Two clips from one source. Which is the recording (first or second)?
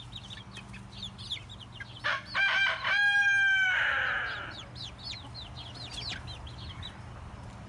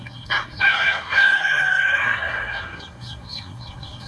first